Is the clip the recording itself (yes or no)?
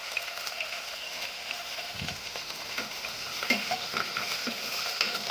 no